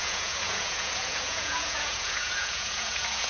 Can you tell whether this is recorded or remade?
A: remade